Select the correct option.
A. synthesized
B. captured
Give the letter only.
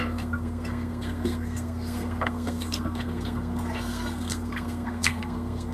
A